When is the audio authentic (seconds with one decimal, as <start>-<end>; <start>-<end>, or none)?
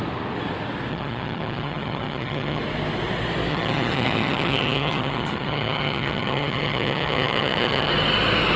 0.0-0.9; 2.6-3.5; 7.9-8.6